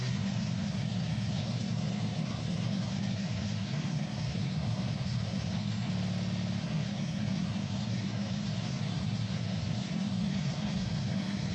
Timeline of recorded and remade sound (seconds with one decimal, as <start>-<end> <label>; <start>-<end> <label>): 0.0-5.9 remade; 5.9-6.6 recorded; 6.6-11.5 remade